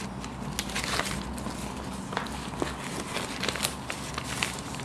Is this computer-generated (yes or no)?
no